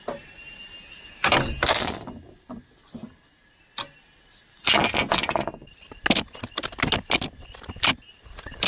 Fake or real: real